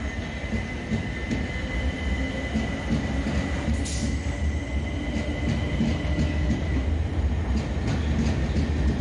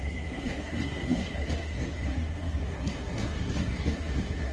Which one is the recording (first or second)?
first